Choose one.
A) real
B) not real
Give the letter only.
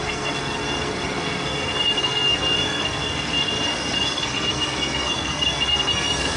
B